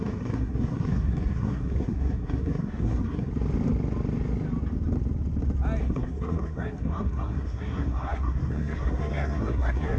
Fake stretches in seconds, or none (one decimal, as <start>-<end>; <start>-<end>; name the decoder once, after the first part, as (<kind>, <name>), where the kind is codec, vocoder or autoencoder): 0.0-3.3 (codec, SNAC); 5.8-10.0